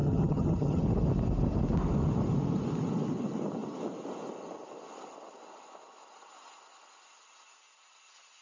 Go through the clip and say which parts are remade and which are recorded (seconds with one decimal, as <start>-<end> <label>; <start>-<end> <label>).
0.0-0.8 remade; 0.8-8.4 recorded

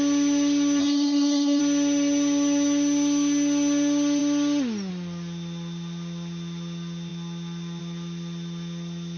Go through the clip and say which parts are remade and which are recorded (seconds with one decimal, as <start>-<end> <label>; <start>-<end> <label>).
0.0-0.8 recorded; 0.8-1.6 remade; 1.6-9.2 recorded

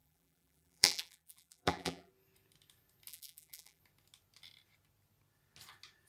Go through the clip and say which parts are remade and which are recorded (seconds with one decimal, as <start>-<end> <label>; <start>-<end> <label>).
0.0-2.1 remade; 2.1-3.1 recorded; 3.1-3.8 remade; 3.8-6.1 recorded

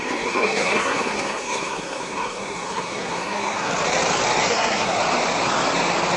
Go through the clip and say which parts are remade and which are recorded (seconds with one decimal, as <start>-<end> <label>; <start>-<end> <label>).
0.0-3.7 remade; 3.7-4.4 recorded; 4.4-5.0 remade; 5.0-6.2 recorded